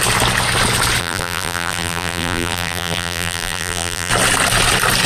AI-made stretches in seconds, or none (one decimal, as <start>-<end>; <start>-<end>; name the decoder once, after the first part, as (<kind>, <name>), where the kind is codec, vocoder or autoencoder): 1.0-4.1 (vocoder, BigVGAN v2)